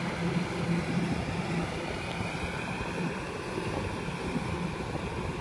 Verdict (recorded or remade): recorded